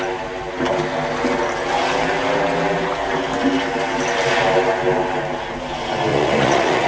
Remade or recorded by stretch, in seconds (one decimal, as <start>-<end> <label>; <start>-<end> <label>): 0.0-6.1 recorded; 6.1-6.9 remade